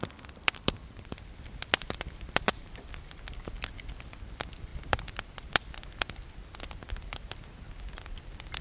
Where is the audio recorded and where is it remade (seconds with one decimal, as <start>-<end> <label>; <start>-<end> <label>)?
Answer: 0.0-8.6 remade